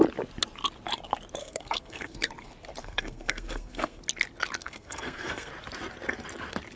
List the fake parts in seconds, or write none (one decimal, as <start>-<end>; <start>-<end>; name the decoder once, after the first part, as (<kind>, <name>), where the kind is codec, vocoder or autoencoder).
1.4-2.3 (codec, SNAC); 2.8-4.0; 4.6-5.5

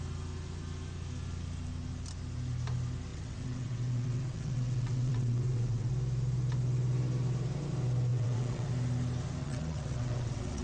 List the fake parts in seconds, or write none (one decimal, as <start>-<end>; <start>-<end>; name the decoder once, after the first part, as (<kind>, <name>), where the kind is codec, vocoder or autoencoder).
3.1-5.9 (vocoder, WaveNeXt); 8.1-8.7; 9.4-10.6

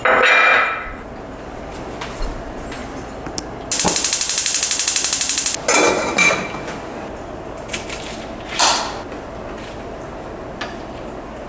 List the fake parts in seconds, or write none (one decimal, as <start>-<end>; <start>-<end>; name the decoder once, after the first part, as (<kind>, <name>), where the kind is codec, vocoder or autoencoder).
none

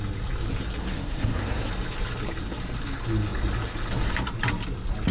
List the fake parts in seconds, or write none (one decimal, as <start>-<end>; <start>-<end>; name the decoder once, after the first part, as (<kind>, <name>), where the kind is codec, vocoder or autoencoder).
0.8-1.7 (codec, SNAC)

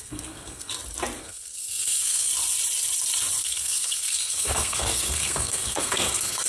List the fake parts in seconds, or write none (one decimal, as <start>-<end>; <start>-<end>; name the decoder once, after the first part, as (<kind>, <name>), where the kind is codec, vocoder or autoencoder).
0.0-0.7 (codec, SNAC); 1.2-2.3; 3.4-6.5

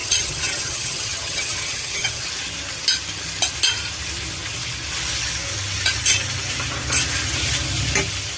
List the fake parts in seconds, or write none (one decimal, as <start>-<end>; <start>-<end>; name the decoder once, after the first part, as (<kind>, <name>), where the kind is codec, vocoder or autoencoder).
0.0-2.2 (vocoder, HiFi-GAN)